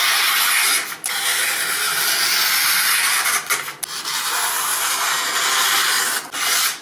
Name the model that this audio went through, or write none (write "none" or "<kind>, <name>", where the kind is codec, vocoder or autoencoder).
none